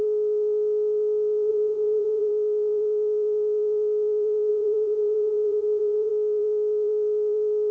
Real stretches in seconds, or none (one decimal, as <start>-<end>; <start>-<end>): 0.0-1.5; 2.3-4.5; 6.1-7.7